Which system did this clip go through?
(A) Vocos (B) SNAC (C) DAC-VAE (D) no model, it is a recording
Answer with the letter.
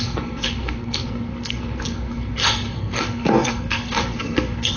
B